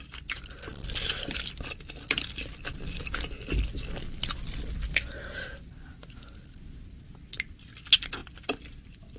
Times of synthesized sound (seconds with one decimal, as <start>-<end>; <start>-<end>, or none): none